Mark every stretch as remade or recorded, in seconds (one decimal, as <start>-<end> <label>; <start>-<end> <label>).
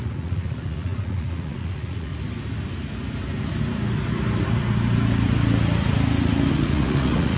0.0-2.1 remade; 2.1-6.5 recorded; 6.5-7.4 remade